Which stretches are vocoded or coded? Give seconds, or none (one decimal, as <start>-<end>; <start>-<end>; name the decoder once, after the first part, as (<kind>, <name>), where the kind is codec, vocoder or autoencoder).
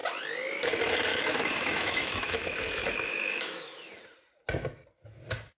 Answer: 1.1-3.9 (autoencoder, DAC-VAE)